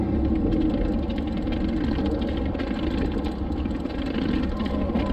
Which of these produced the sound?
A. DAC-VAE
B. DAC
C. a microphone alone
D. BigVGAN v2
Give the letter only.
C